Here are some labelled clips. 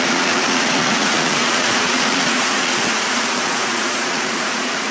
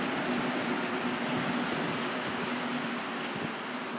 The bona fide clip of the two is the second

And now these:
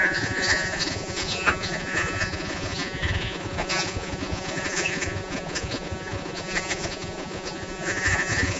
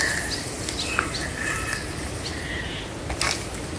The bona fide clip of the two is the second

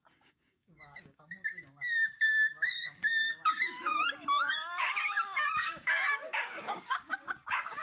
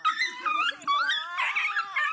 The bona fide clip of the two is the second